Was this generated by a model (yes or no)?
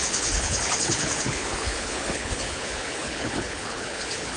yes